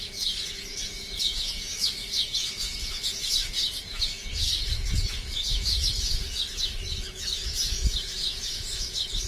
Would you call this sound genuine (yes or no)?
no